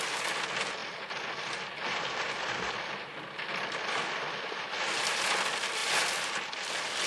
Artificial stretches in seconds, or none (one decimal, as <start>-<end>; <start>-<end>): 0.8-3.2